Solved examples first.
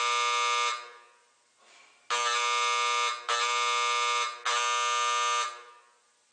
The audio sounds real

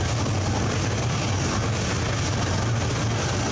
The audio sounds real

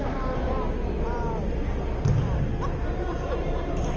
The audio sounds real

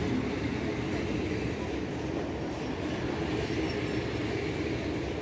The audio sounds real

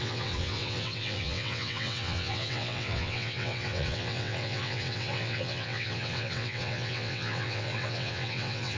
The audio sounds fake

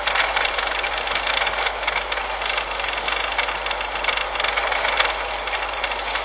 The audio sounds real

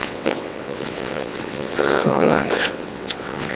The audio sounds fake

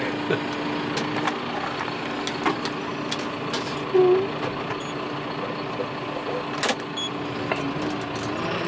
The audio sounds real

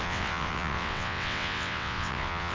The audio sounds fake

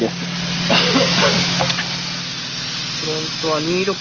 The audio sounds real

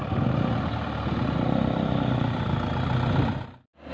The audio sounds real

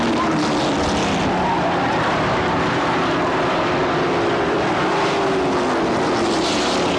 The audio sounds real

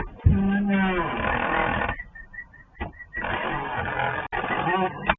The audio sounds real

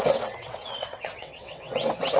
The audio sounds fake